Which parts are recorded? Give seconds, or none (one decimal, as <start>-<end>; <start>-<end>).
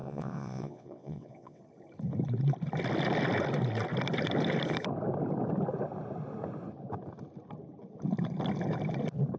1.6-9.4